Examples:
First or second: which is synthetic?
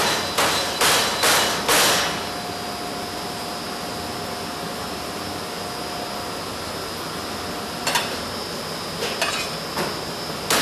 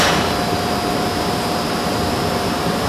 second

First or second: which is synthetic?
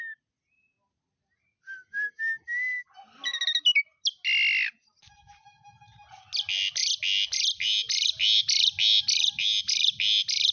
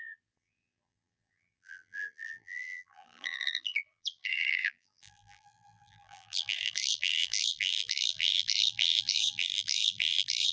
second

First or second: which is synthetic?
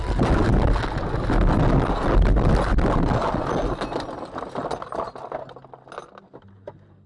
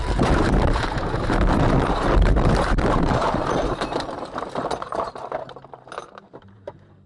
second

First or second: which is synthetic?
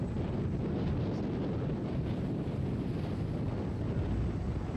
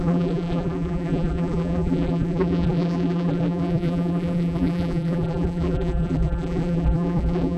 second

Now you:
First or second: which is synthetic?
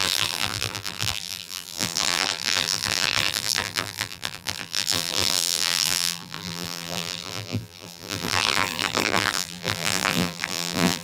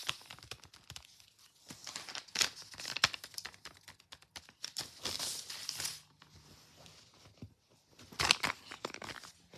first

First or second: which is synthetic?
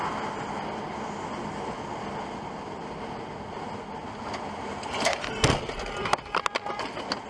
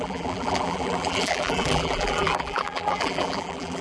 second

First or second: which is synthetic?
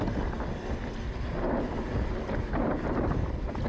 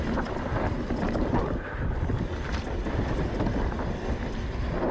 second